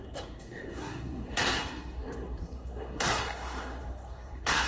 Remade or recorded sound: remade